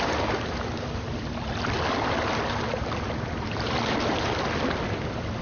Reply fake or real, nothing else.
real